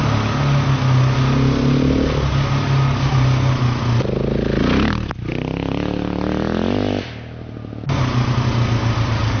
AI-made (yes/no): no